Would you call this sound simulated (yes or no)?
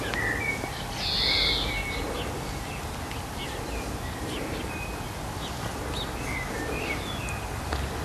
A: no